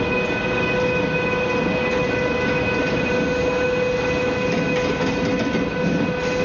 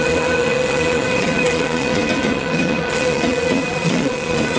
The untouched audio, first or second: first